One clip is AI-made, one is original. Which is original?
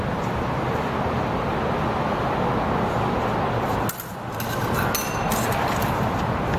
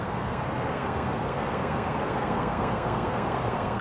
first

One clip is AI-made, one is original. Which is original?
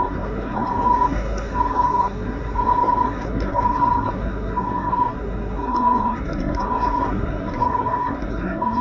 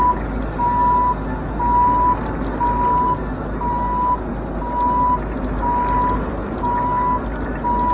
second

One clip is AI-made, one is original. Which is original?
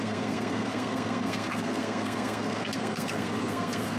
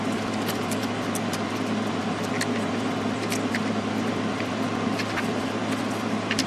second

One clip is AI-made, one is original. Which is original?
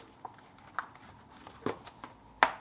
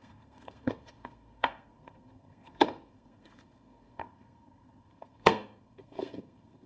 first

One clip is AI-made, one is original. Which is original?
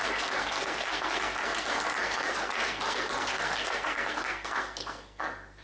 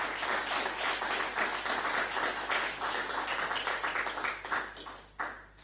second